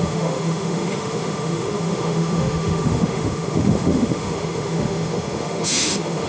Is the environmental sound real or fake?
fake